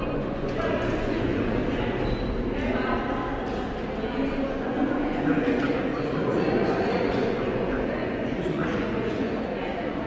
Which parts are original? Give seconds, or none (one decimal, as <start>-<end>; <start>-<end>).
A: 1.6-4.5